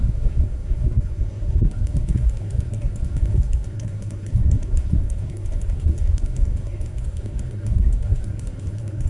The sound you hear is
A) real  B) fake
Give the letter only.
B